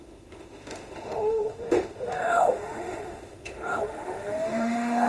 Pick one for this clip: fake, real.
fake